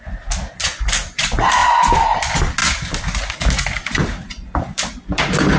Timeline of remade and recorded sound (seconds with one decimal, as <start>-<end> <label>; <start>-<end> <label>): 0.0-5.6 recorded